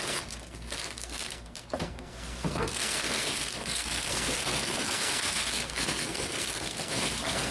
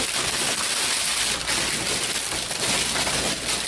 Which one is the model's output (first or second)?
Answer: first